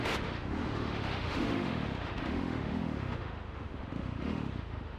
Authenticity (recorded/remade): remade